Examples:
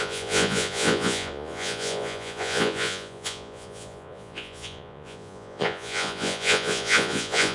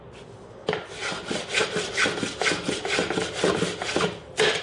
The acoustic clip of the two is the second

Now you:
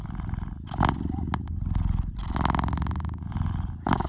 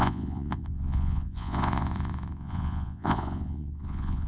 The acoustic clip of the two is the first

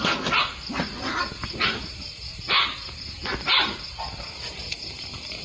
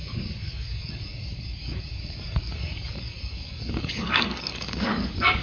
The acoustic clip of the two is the first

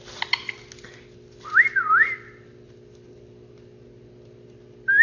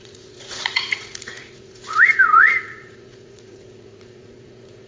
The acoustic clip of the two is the first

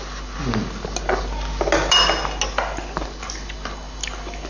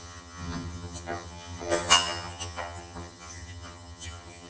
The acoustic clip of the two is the first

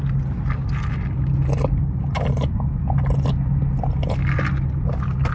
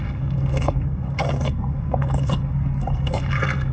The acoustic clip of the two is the first